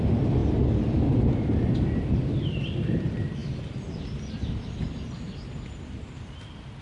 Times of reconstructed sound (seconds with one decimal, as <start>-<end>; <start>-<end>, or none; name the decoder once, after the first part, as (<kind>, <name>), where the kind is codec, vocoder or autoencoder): 0.0-0.4 (vocoder, BigVGAN v2); 1.7-3.4; 4.8-6.8